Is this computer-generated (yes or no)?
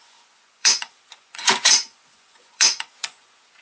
yes